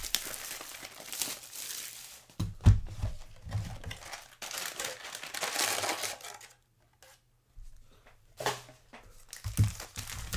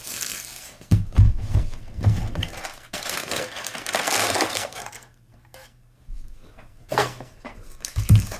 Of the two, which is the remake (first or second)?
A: second